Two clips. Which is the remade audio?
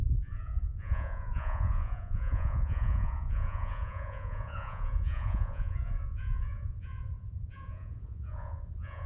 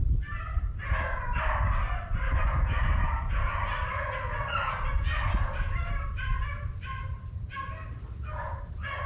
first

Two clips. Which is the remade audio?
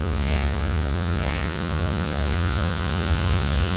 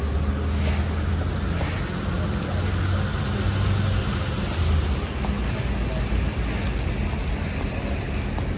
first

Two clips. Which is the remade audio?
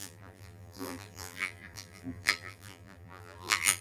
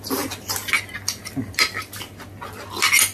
first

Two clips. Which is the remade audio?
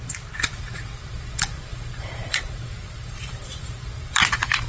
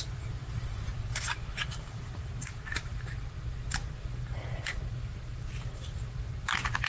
first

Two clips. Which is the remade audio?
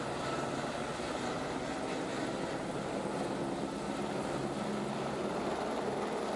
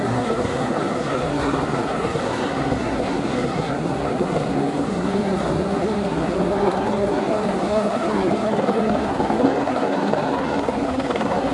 second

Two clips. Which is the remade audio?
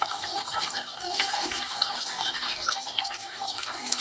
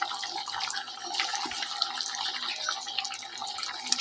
first